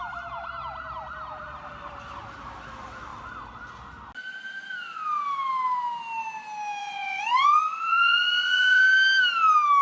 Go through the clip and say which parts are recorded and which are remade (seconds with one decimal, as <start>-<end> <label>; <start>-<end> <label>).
0.0-6.8 recorded; 6.8-8.8 remade; 8.8-9.8 recorded